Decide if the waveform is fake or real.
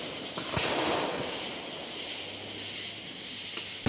real